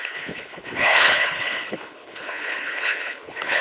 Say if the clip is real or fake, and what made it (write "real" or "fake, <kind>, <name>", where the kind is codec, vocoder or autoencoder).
fake, codec, HILCodec